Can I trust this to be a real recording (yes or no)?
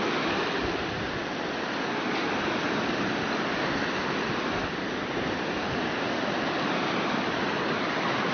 yes